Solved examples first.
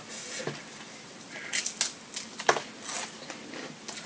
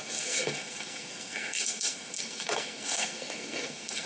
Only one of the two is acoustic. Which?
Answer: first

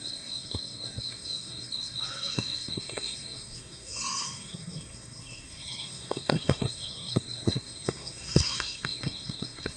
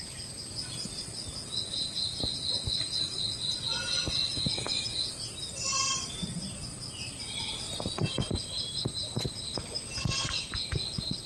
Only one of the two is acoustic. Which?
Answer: second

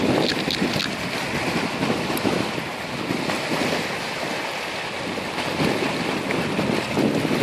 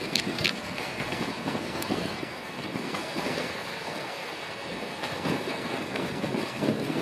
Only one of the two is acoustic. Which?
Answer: first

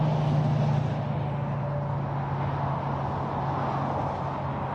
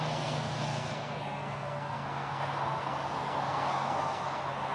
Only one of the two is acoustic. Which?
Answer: first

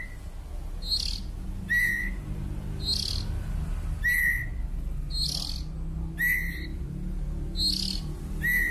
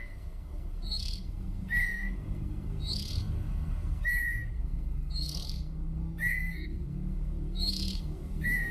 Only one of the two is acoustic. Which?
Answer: first